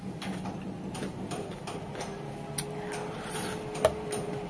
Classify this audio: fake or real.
real